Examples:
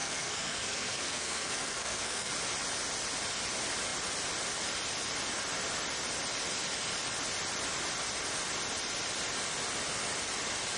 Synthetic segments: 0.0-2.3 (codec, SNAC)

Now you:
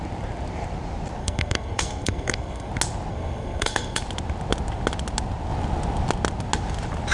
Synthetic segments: 1.2-2.7 (codec, SNAC); 3.1-4.0

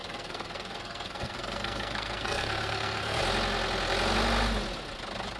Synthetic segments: 0.0-3.2 (codec, SNAC)

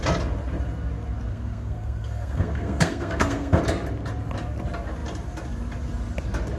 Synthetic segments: 1.3-3.6 (codec, SNAC)